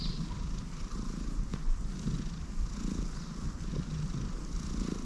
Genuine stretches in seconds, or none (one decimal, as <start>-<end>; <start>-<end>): 1.5-4.5